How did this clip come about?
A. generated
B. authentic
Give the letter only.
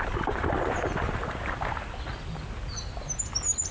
B